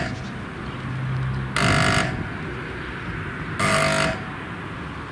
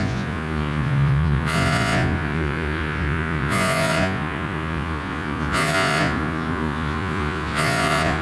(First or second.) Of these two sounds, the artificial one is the second